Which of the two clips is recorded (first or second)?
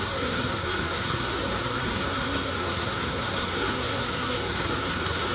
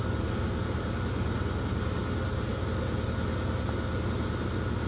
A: second